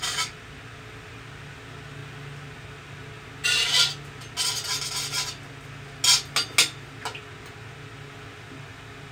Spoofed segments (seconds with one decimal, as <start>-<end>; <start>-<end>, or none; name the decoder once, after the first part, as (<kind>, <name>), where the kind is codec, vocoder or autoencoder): none